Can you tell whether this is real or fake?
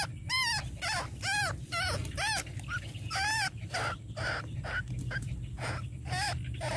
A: real